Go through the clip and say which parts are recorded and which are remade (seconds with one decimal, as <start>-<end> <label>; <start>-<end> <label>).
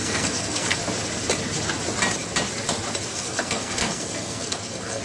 0.0-0.8 remade; 0.8-3.1 recorded; 3.1-5.0 remade